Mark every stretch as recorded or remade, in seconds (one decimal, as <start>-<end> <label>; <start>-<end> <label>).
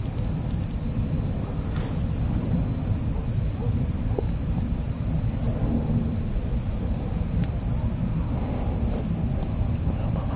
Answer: 0.0-3.6 recorded; 3.6-4.9 remade; 4.9-6.1 recorded; 6.1-6.8 remade; 6.8-10.4 recorded